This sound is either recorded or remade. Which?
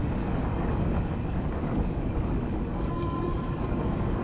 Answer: remade